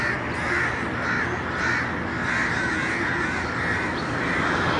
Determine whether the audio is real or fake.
real